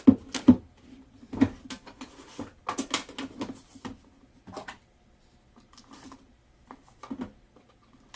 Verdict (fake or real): real